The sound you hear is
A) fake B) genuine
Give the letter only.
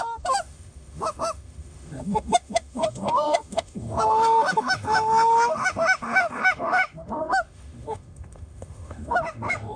A